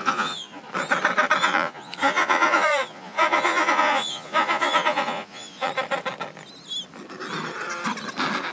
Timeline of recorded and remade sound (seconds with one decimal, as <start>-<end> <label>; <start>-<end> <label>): 0.0-0.6 remade; 0.6-1.4 recorded; 1.4-5.7 remade; 5.7-8.5 recorded